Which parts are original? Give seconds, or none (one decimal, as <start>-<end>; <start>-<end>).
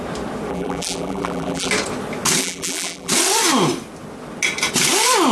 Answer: 0.0-0.5; 1.7-2.4; 3.1-5.3